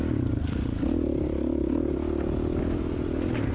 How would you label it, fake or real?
real